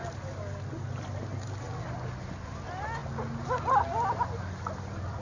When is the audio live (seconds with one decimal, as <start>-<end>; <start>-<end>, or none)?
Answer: 0.0-5.2